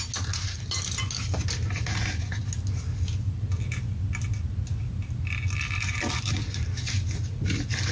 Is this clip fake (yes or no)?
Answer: no